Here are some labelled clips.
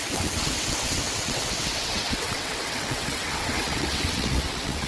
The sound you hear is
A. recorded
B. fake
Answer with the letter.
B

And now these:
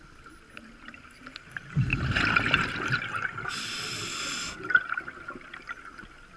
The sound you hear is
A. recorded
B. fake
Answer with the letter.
A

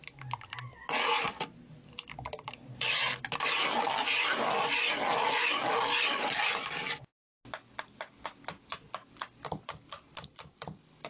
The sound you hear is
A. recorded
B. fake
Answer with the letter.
A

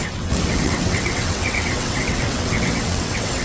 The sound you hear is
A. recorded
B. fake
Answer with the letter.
B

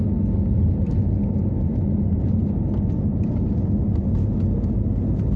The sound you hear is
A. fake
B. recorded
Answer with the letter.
B